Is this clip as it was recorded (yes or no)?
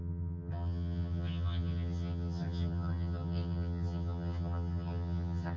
no